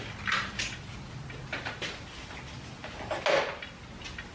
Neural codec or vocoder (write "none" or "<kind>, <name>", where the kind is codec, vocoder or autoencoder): none